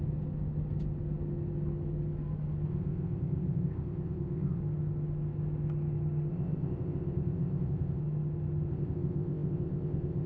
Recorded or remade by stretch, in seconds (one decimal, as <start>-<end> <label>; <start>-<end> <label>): 0.0-2.7 recorded; 2.7-4.6 remade; 4.6-6.3 recorded; 6.3-8.0 remade; 8.0-8.7 recorded; 8.7-10.3 remade